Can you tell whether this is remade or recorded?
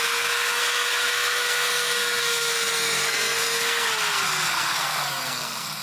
remade